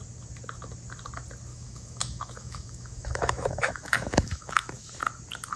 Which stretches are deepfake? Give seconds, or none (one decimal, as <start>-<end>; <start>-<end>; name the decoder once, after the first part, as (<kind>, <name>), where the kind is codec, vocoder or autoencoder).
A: 1.5-4.9 (autoencoder, DAC-VAE)